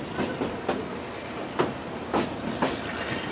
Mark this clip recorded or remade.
recorded